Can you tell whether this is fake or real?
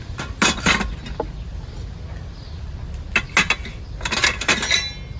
real